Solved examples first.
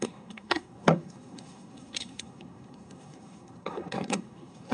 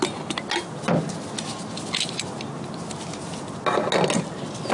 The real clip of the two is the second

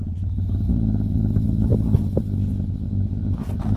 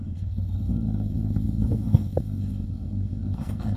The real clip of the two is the first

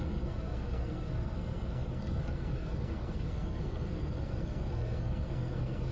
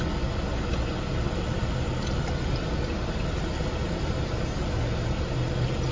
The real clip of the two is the second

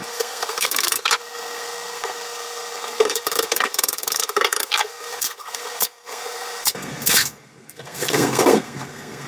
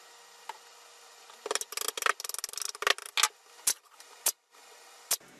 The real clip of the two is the second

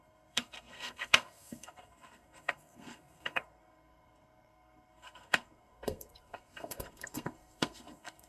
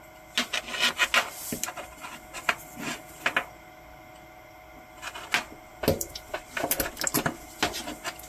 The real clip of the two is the second